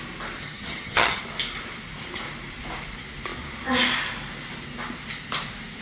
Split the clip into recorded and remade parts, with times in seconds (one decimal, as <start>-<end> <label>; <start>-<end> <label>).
0.0-0.4 recorded; 0.4-1.2 remade; 1.2-5.8 recorded